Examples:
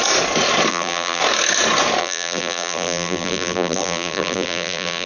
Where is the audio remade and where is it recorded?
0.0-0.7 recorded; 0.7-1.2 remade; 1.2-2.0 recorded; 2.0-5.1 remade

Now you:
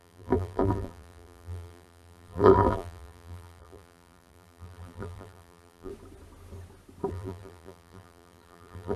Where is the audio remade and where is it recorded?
0.0-5.9 remade; 5.9-7.1 recorded; 7.1-9.0 remade

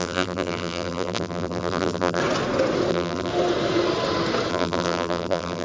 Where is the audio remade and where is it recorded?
0.0-2.2 remade; 2.2-2.9 recorded; 2.9-3.3 remade; 3.3-4.5 recorded; 4.5-5.6 remade

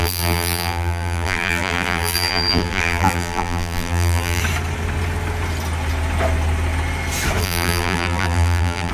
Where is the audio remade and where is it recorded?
0.0-4.4 remade; 4.4-7.4 recorded; 7.4-8.9 remade

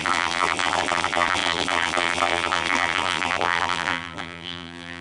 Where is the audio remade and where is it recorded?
0.0-5.0 remade

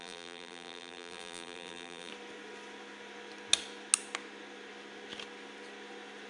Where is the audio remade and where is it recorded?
0.0-2.1 remade; 2.1-6.3 recorded

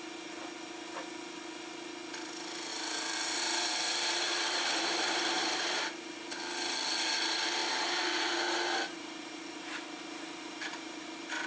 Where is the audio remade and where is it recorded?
0.0-2.7 recorded; 2.7-6.3 remade; 6.3-7.6 recorded; 7.6-11.5 remade

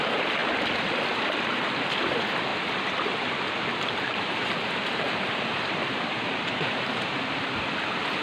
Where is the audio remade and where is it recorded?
0.0-2.5 recorded; 2.5-7.1 remade; 7.1-8.2 recorded